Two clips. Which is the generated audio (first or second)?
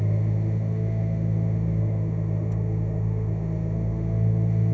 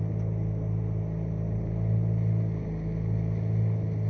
first